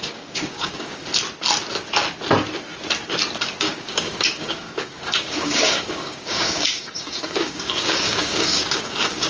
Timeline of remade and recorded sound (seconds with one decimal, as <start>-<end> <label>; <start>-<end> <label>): 0.0-1.1 remade; 1.1-3.6 recorded; 3.6-9.3 remade